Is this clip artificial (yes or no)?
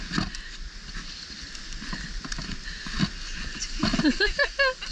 no